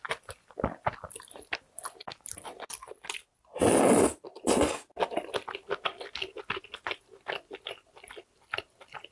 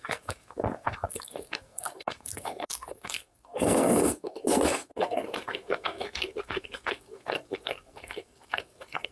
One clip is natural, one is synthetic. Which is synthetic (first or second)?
second